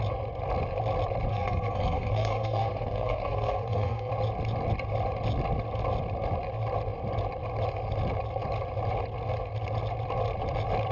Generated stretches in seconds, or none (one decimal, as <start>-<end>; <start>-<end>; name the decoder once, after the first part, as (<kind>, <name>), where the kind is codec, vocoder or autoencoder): 1.3-4.1 (codec, SNAC)